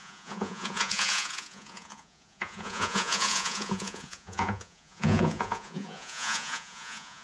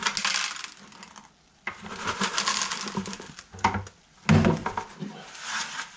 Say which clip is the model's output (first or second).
first